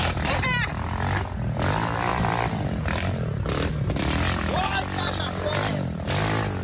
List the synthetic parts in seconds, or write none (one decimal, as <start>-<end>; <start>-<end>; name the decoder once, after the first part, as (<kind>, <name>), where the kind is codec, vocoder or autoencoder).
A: 0.0-0.7 (vocoder, BigVGAN v2); 2.1-6.1